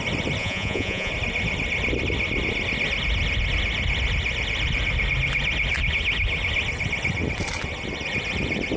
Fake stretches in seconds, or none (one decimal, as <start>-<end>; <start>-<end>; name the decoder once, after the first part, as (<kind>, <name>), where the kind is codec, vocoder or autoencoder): 0.4-1.1 (vocoder, Vocos)